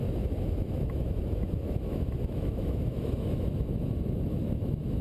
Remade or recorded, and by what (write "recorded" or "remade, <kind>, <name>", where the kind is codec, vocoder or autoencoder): remade, autoencoder, DAC-VAE